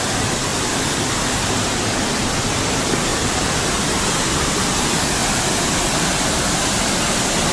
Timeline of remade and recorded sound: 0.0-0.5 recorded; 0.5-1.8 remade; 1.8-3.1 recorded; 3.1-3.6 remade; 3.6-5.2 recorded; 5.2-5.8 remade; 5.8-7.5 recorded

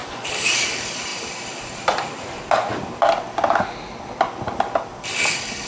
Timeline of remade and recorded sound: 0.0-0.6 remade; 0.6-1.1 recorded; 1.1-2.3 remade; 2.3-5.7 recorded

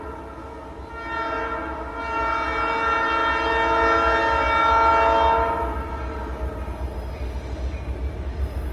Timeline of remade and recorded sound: 0.0-8.7 recorded

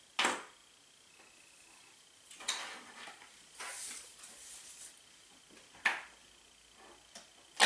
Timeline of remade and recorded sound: 0.0-7.7 recorded

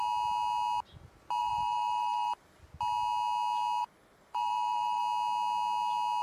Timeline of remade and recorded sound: 0.0-1.4 recorded; 1.4-2.6 remade; 2.6-3.8 recorded; 3.8-5.0 remade; 5.0-6.2 recorded

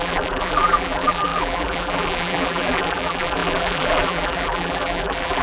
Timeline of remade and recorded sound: 0.0-5.4 remade